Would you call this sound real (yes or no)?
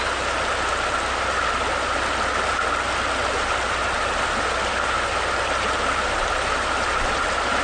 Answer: yes